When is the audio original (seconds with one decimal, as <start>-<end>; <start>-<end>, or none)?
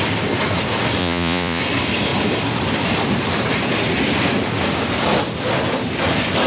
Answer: 0.0-1.0; 1.6-6.5